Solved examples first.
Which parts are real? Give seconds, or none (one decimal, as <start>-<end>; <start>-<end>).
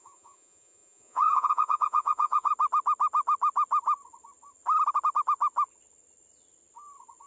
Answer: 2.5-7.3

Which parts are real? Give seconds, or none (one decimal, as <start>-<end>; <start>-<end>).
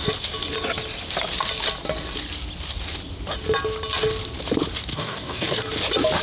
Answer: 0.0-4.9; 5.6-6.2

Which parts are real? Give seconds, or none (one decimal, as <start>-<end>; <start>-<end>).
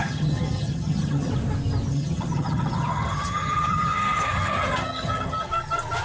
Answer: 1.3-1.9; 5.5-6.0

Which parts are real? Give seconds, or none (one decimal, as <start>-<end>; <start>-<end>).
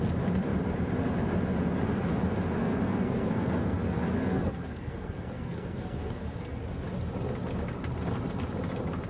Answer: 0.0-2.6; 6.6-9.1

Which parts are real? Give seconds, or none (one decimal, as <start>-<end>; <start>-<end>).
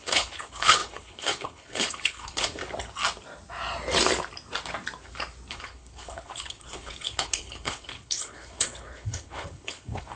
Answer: 2.6-5.5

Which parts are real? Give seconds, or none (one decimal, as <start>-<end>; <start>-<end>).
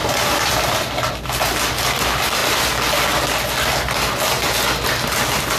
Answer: 1.1-5.6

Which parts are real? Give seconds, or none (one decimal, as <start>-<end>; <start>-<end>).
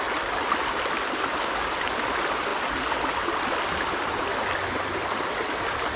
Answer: 0.0-6.0